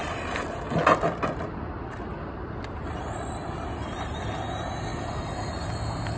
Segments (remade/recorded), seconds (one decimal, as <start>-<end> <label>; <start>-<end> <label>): 0.0-6.2 recorded